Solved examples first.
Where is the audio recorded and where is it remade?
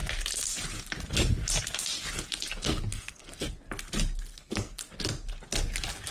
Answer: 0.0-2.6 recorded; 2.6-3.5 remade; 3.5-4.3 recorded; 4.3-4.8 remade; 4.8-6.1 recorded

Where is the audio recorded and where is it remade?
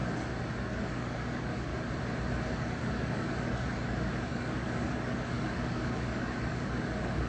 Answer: 0.0-0.6 recorded; 0.6-1.7 remade; 1.7-2.5 recorded; 2.5-7.3 remade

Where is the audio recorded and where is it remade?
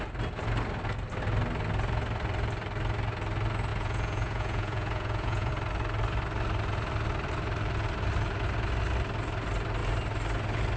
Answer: 0.0-3.7 recorded; 3.7-5.5 remade; 5.5-10.8 recorded